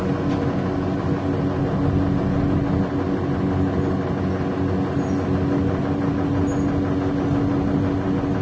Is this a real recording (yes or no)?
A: yes